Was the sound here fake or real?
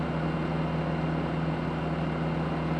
real